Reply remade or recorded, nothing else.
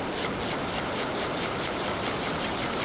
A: recorded